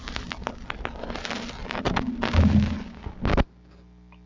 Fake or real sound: real